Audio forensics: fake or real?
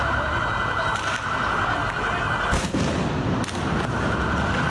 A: real